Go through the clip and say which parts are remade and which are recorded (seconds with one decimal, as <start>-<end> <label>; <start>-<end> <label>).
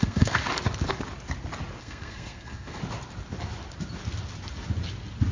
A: 0.0-0.4 remade; 0.4-1.8 recorded; 1.8-2.8 remade; 2.8-5.3 recorded